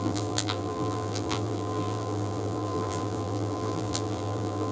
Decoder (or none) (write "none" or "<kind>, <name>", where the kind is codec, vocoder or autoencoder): vocoder, BigVGAN v2